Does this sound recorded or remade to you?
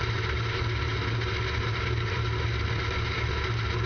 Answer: recorded